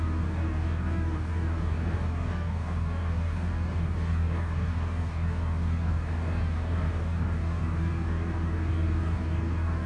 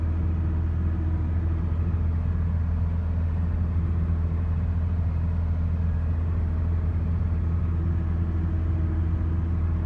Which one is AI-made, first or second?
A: first